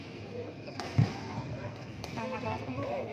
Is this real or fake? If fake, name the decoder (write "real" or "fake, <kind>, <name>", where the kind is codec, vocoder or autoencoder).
fake, codec, SNAC